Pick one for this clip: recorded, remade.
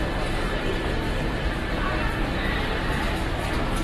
recorded